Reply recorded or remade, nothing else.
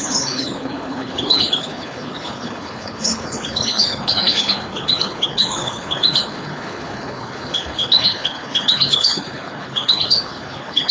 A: remade